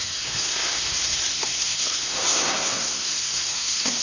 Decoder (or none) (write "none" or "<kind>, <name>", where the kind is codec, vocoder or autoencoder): codec, SNAC